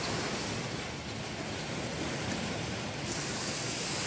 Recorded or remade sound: recorded